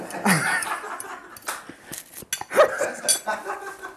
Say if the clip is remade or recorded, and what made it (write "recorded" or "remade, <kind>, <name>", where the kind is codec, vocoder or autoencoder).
recorded